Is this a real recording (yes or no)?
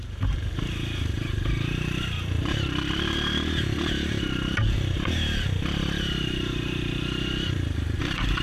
no